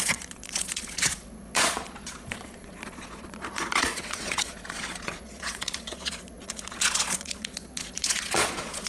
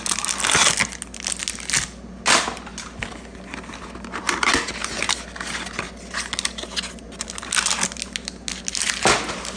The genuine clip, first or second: second